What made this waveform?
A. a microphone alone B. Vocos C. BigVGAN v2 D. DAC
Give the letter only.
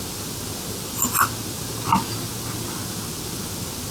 A